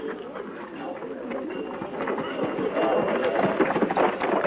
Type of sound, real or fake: real